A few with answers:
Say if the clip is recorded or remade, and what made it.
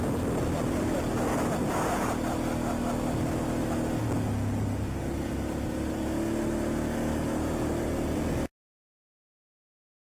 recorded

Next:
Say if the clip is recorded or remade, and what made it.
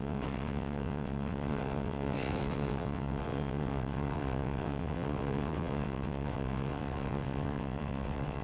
remade, vocoder, WaveNeXt